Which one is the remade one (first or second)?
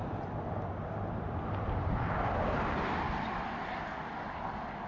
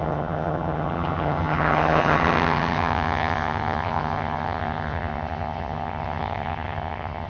second